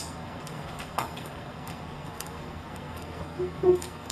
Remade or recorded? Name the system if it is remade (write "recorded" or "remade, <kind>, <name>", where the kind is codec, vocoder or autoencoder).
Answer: remade, codec, SNAC